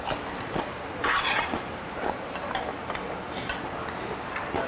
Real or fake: real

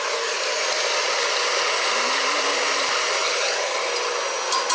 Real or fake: real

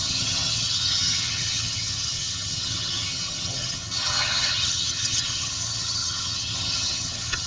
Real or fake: fake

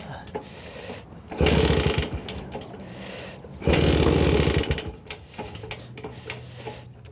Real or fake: real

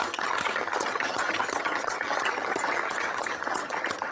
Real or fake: fake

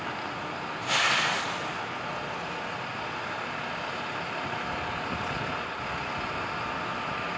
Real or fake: real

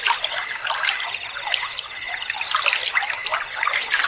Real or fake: real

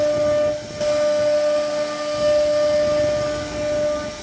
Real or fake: real